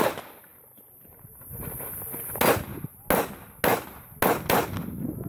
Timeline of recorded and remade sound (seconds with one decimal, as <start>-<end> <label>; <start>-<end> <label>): 0.0-5.3 recorded